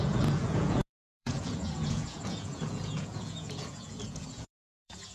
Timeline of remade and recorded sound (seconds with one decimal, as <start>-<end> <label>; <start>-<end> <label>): 0.0-5.1 remade